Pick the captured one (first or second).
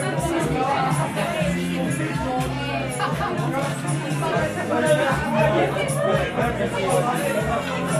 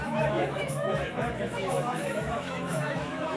first